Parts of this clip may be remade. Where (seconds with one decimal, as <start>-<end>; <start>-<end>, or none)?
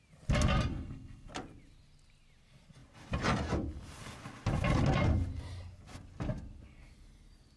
0.7-1.3